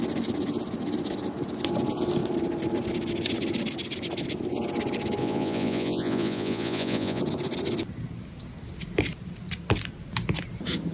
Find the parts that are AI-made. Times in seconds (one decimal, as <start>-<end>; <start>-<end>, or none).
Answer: 5.2-7.2